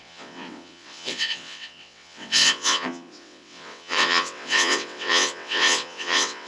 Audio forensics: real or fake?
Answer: fake